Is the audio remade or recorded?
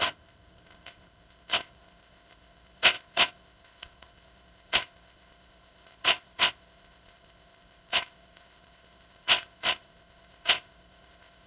remade